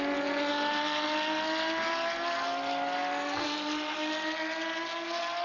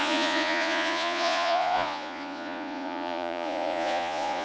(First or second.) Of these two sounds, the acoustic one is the first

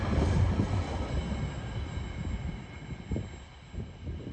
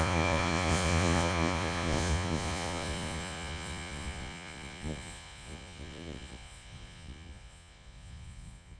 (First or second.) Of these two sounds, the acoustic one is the first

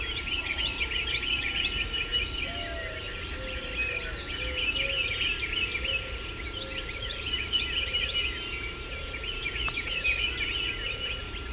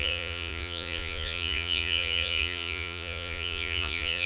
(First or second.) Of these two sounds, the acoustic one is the first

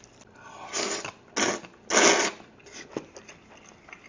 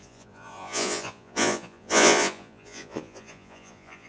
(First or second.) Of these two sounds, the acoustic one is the first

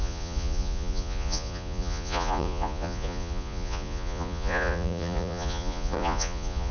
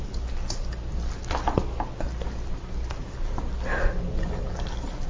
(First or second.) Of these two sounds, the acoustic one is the second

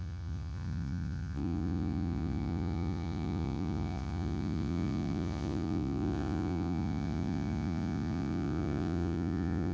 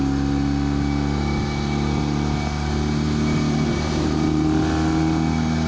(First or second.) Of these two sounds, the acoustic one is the second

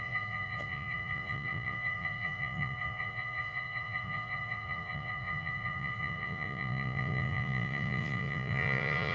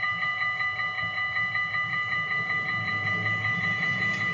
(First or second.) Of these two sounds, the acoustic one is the second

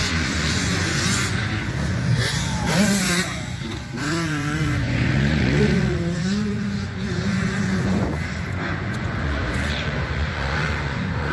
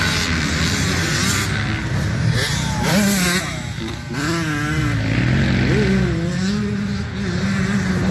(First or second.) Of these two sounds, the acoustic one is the second